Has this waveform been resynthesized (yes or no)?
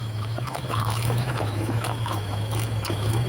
yes